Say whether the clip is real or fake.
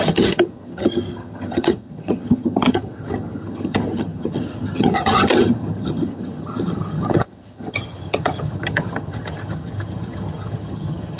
fake